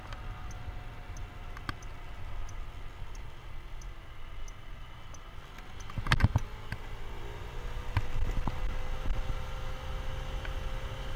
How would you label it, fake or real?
real